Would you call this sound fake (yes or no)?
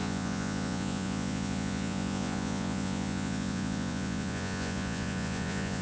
yes